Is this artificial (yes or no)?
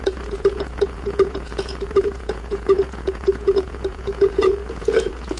yes